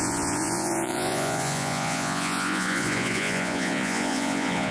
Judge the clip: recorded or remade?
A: remade